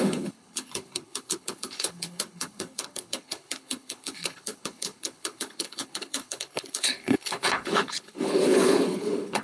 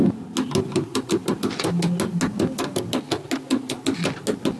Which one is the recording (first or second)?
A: second